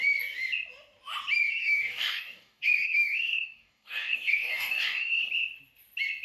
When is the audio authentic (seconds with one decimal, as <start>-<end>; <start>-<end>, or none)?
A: 0.0-1.6; 5.3-6.2